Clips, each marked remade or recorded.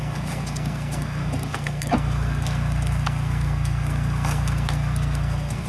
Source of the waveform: remade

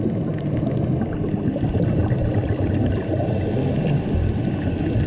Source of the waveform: recorded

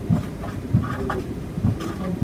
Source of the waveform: remade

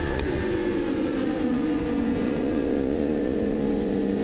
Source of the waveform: remade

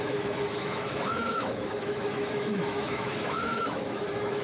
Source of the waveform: remade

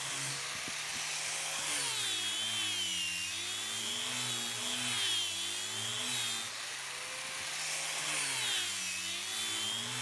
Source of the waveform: recorded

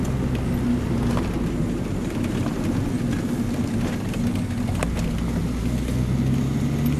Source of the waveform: recorded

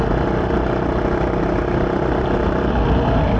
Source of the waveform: recorded